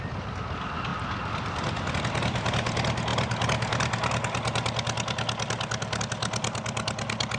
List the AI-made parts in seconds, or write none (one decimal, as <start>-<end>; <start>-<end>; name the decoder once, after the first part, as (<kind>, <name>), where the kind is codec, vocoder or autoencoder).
none

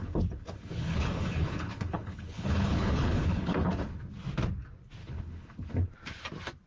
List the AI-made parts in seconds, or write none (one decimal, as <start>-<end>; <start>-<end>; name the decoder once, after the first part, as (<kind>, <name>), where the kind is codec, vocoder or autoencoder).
0.0-4.0 (codec, HILCodec); 5.0-5.9

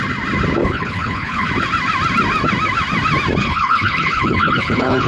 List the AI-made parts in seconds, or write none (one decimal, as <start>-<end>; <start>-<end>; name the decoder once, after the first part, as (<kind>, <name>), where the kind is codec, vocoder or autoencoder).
0.6-1.5 (codec, HILCodec); 3.4-5.1